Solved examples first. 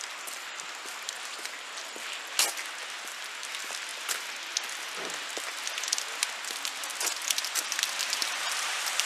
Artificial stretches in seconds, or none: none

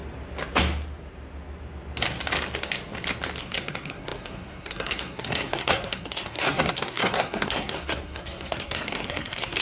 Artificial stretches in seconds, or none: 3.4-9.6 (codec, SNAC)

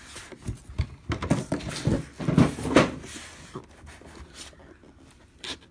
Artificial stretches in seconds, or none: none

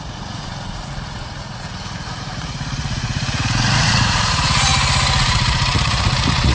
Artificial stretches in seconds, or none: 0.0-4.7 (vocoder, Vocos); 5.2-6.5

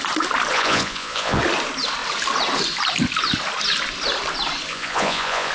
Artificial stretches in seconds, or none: 0.5-1.4 (vocoder, Vocos); 4.7-5.5